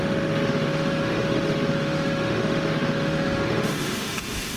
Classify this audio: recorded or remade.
remade